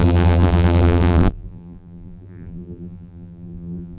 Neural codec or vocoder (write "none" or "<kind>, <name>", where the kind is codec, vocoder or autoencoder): vocoder, BigVGAN v2